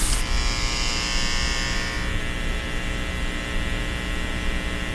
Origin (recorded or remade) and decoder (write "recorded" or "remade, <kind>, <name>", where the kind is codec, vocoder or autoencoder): recorded